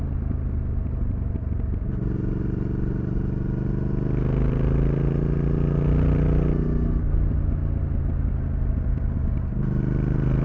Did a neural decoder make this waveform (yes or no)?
no